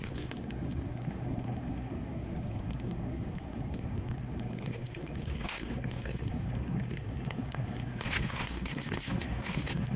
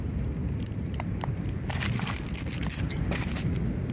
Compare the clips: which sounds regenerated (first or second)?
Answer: first